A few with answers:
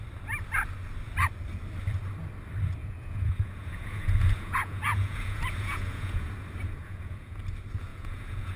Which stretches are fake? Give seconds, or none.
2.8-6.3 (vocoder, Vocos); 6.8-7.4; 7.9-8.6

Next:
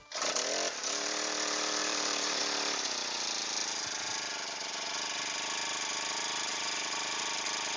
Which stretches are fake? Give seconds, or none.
1.8-2.4 (vocoder, BigVGAN v2); 6.5-7.2

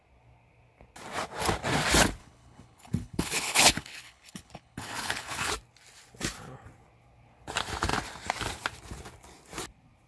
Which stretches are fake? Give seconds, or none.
2.2-5.5 (codec, HILCodec)

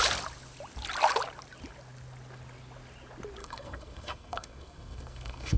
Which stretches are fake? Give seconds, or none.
3.4-5.6 (codec, SNAC)

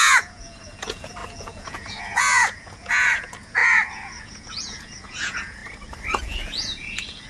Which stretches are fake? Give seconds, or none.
0.0-5.6 (vocoder, Vocos); 6.2-7.3

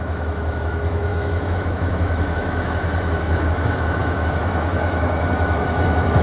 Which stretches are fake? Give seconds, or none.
0.0-6.2 (autoencoder, DAC-VAE)